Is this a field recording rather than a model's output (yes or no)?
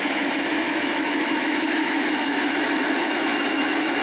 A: no